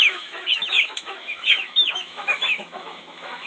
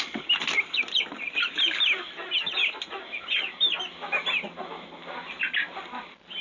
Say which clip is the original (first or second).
second